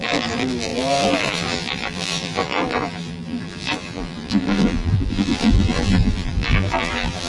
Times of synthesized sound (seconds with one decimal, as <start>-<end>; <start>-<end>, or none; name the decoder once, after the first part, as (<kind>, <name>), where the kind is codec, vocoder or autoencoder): 0.0-7.3 (vocoder, BigVGAN v2)